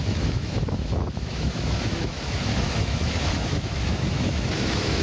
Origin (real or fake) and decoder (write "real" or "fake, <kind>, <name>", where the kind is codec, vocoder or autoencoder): fake, autoencoder, DAC-VAE